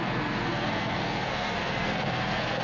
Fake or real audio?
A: fake